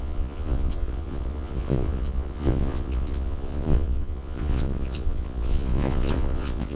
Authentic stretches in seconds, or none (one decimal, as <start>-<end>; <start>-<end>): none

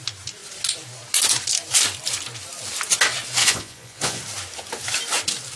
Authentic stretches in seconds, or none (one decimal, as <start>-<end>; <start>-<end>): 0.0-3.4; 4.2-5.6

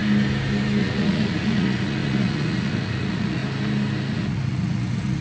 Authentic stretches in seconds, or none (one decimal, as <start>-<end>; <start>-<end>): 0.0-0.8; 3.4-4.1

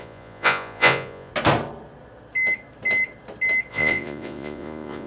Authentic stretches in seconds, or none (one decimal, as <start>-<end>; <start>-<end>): 1.3-3.7

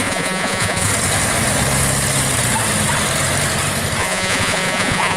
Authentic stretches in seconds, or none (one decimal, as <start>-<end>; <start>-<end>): 0.9-4.0

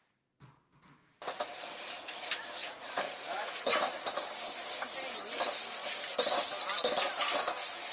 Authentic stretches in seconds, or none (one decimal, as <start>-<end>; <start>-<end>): 0.0-2.6; 4.0-7.9

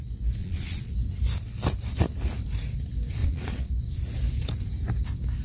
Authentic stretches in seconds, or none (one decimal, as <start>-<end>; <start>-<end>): 0.0-0.4; 0.9-3.2; 3.7-5.4

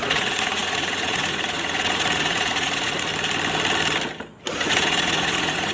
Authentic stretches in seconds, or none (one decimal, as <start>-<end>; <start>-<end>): 3.1-4.5